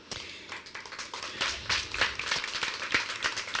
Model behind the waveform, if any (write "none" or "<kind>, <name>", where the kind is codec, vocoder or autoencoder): vocoder, BigVGAN v2